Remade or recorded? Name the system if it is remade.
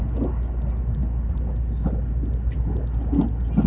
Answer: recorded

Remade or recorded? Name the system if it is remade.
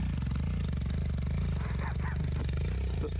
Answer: recorded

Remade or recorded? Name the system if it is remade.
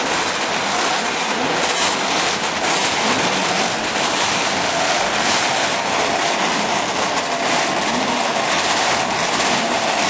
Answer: recorded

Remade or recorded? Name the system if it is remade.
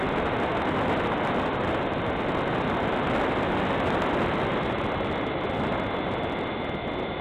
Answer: recorded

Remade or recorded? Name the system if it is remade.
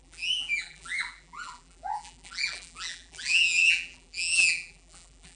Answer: remade, vocoder, BigVGAN v2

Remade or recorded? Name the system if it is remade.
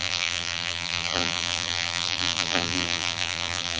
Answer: remade, vocoder, BigVGAN v2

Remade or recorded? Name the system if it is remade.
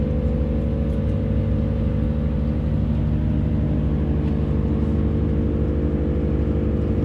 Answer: recorded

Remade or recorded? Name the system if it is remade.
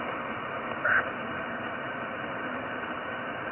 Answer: remade, vocoder, BigVGAN v2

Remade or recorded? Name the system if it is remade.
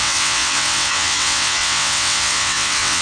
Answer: remade, vocoder, WaveNeXt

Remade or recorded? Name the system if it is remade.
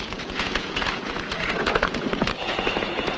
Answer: remade, vocoder, Vocos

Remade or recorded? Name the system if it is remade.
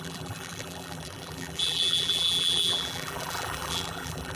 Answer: remade, vocoder, BigVGAN v2